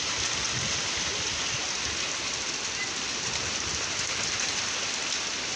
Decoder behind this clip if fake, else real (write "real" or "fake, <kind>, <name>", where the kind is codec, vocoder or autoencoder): real